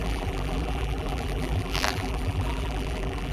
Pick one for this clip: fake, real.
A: fake